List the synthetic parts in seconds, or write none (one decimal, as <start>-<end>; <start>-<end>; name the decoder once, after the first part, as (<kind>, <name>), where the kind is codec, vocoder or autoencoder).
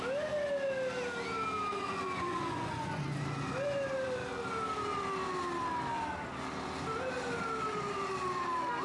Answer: 1.7-3.0 (vocoder, Vocos)